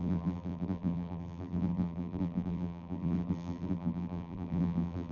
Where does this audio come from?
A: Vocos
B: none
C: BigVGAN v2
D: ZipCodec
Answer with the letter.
C